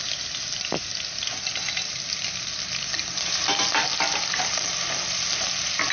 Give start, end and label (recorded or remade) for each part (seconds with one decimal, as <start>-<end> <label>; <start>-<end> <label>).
0.0-5.9 recorded